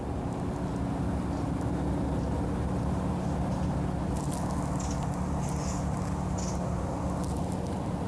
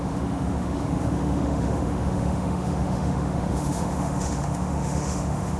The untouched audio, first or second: first